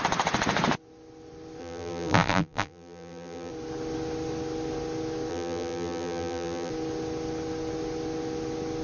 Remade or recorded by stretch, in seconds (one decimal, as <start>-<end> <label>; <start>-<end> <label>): 0.0-1.6 recorded; 1.6-3.5 remade; 3.5-5.3 recorded; 5.3-6.7 remade; 6.7-8.8 recorded